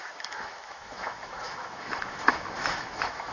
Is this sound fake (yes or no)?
yes